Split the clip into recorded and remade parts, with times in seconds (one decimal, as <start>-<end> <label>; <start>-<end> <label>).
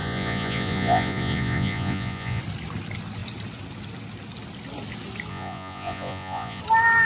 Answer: 0.0-2.4 remade; 2.4-5.3 recorded; 5.3-6.6 remade; 6.6-7.0 recorded